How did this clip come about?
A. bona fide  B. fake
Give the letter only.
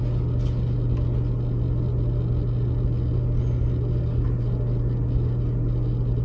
A